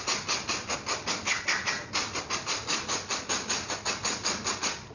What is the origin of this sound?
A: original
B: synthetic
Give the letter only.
A